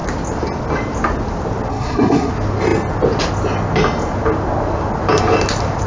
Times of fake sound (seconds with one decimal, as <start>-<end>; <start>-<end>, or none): 1.7-2.3